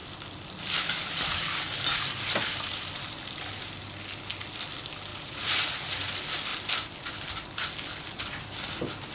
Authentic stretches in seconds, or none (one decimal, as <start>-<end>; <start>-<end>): 0.0-5.1; 6.1-9.1